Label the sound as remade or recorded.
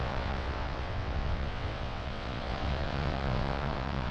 remade